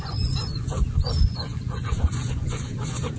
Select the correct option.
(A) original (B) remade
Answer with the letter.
B